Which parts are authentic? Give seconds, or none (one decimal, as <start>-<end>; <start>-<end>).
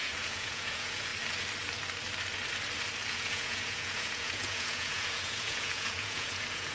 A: 1.1-3.1